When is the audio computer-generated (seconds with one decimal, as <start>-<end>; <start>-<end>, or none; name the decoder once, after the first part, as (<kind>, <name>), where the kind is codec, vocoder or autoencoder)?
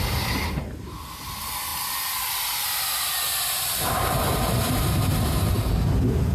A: 1.7-5.5 (vocoder, BigVGAN v2)